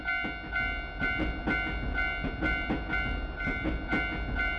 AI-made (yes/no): no